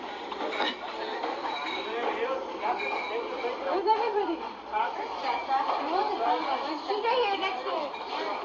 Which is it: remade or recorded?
remade